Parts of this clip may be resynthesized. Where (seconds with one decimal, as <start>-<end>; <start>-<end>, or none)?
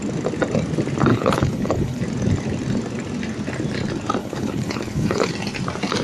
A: 1.1-2.0; 4.2-5.3